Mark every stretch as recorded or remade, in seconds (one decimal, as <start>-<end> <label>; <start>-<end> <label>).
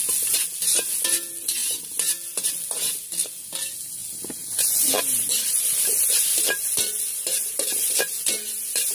0.0-8.9 recorded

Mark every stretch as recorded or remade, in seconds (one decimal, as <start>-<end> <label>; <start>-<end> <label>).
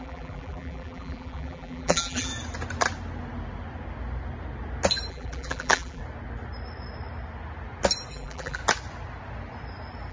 0.0-2.3 remade; 2.3-5.1 recorded; 5.1-6.0 remade; 6.0-8.1 recorded; 8.1-8.6 remade; 8.6-10.1 recorded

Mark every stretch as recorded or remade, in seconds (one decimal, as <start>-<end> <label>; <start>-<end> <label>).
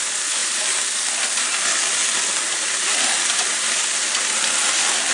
0.0-2.0 remade; 2.0-2.7 recorded; 2.7-5.1 remade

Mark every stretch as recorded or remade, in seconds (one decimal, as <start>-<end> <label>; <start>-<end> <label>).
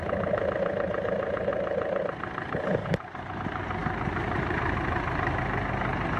0.0-2.8 recorded; 2.8-3.3 remade; 3.3-3.8 recorded; 3.8-5.4 remade; 5.4-6.2 recorded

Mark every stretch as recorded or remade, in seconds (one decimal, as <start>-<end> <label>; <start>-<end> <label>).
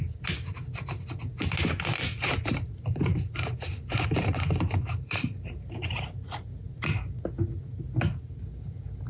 0.0-1.9 recorded; 1.9-6.0 remade; 6.0-9.1 recorded